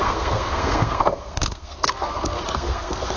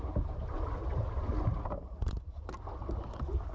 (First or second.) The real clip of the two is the second